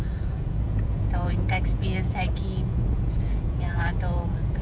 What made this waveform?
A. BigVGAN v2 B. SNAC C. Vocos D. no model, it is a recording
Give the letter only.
C